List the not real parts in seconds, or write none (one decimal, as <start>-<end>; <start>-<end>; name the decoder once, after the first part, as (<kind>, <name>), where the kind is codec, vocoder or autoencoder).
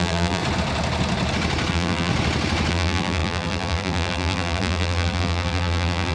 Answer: 0.0-0.4 (vocoder, BigVGAN v2); 1.7-2.1; 2.7-6.1